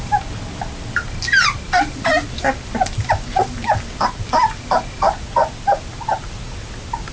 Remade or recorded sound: recorded